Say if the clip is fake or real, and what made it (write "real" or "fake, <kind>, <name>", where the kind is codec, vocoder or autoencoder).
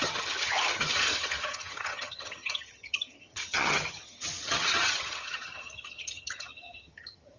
fake, vocoder, HiFi-GAN